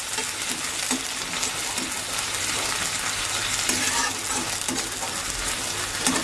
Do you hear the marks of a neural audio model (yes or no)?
no